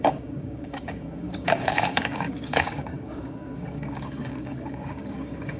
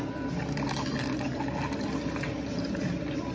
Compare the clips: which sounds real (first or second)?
second